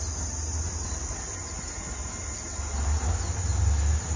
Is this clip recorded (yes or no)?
yes